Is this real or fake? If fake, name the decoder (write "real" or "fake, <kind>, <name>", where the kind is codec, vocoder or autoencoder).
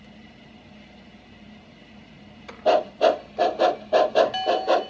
real